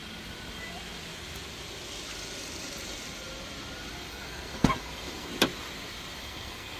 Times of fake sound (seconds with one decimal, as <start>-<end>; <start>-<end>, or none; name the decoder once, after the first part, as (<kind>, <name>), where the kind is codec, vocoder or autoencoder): 4.1-5.3 (codec, SNAC); 6.2-6.8